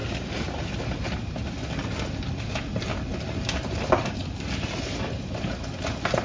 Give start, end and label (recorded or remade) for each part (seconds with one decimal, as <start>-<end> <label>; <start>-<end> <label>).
0.0-6.2 recorded